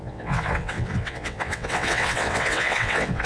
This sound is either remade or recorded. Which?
remade